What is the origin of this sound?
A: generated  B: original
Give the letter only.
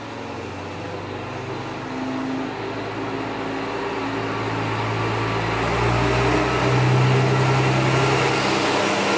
B